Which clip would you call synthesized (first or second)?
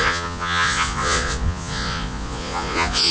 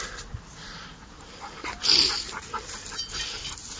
first